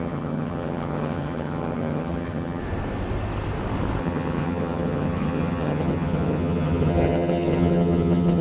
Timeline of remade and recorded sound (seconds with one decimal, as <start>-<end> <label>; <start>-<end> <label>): 0.0-2.6 remade; 2.6-4.0 recorded; 4.0-8.4 remade